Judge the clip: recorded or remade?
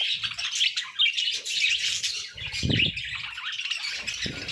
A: recorded